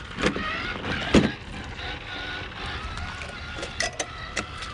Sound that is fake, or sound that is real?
real